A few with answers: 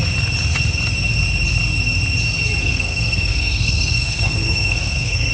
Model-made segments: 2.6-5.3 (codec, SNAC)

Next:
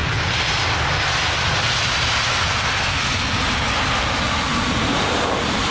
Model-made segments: none

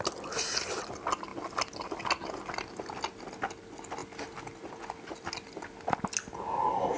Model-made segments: none

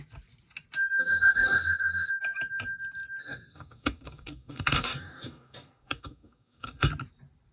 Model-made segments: 1.0-2.1 (codec, DAC); 3.2-6.9